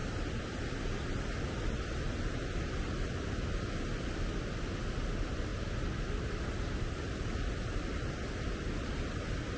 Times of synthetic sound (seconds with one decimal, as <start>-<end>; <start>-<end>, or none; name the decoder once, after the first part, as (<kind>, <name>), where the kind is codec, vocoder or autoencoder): none